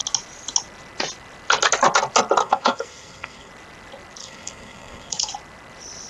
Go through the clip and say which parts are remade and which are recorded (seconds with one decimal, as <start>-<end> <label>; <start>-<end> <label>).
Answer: 0.0-2.4 recorded; 2.4-3.5 remade; 3.5-4.2 recorded; 4.2-5.3 remade; 5.3-6.1 recorded